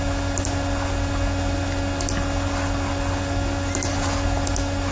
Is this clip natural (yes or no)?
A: yes